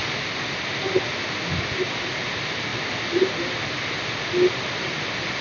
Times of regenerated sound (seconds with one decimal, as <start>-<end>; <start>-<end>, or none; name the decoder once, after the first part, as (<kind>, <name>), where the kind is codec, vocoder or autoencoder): none